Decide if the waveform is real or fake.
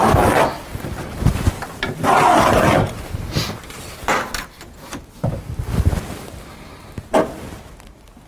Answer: fake